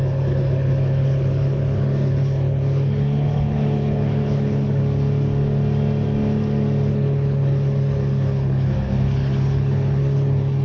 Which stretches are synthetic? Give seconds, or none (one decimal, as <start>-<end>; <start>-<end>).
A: 0.0-4.8; 6.9-10.6